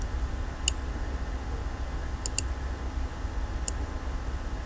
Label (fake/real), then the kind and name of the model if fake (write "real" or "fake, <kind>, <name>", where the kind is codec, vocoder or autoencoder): real